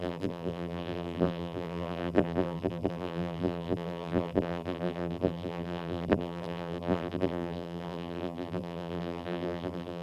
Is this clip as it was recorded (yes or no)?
no